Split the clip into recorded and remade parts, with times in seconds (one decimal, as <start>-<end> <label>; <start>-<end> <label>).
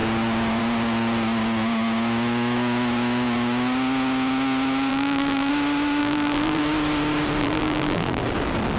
0.0-4.9 recorded; 4.9-5.5 remade; 5.5-6.0 recorded; 6.0-6.6 remade; 6.6-7.4 recorded; 7.4-8.2 remade; 8.2-8.8 recorded